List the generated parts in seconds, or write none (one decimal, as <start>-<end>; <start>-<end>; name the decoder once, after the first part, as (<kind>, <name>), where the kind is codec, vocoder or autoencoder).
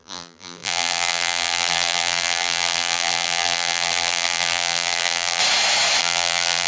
0.0-5.4 (vocoder, BigVGAN v2); 6.0-6.7